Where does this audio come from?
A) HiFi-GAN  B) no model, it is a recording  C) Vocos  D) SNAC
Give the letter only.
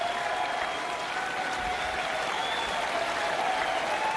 B